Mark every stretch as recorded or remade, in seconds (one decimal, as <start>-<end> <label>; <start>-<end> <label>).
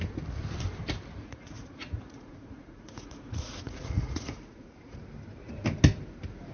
0.0-1.2 recorded; 1.2-5.0 remade; 5.0-6.5 recorded